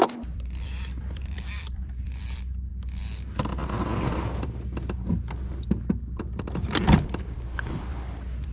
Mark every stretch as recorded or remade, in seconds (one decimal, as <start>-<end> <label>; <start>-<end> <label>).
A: 0.0-2.7 remade; 2.7-6.2 recorded; 6.2-8.5 remade